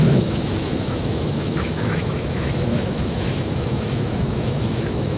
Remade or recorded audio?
remade